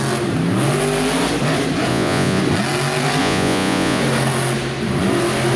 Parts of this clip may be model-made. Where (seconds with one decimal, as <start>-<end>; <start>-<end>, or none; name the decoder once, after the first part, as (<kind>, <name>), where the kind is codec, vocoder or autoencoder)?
1.9-2.4 (vocoder, Vocos); 3.2-4.0